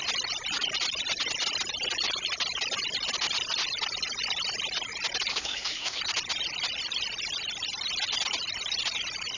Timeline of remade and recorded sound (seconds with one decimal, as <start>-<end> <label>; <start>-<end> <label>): 0.0-5.3 recorded; 5.3-6.0 remade; 6.0-9.4 recorded